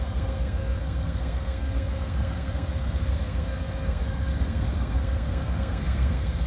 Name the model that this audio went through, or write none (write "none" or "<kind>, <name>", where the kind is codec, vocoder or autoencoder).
codec, SNAC